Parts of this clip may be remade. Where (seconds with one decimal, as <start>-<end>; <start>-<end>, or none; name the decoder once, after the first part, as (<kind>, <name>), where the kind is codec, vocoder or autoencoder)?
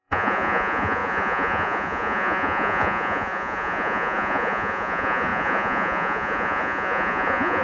0.0-7.6 (vocoder, Vocos)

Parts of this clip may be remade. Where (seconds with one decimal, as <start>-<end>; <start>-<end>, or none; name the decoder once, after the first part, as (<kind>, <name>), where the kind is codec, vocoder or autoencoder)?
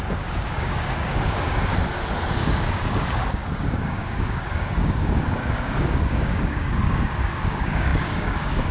0.0-1.7 (codec, DAC); 2.3-8.7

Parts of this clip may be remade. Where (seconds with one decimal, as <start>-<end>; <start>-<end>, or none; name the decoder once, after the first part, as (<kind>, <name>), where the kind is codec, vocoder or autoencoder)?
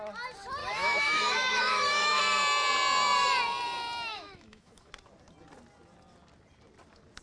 0.6-2.2 (autoencoder, DAC-VAE); 4.1-4.9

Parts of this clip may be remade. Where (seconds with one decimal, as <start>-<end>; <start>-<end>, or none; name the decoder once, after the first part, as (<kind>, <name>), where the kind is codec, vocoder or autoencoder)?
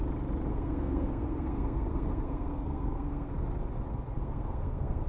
0.5-3.3 (codec, SNAC); 4.2-5.1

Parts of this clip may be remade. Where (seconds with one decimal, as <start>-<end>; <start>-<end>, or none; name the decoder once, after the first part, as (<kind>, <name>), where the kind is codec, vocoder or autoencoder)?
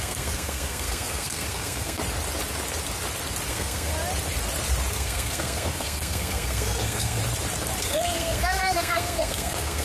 0.0-2.0 (codec, SNAC); 3.5-3.9; 4.9-7.2; 7.8-9.8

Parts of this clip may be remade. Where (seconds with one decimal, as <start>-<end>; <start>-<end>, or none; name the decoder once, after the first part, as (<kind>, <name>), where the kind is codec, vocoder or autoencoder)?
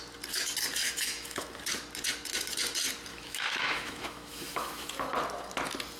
0.8-1.6 (autoencoder, DAC-VAE); 3.1-4.9